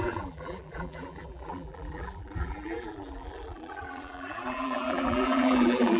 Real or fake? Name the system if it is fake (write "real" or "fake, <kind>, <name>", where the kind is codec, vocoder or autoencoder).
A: fake, vocoder, BigVGAN v2